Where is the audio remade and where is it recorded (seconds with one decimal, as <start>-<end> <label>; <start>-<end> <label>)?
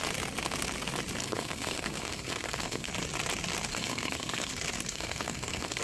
0.0-1.2 recorded; 1.2-2.9 remade; 2.9-3.7 recorded; 3.7-4.5 remade; 4.5-4.9 recorded; 4.9-5.8 remade